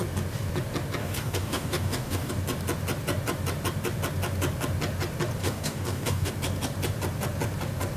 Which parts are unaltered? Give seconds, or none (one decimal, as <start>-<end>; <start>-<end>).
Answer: 0.0-1.0; 2.3-5.4; 6.3-8.0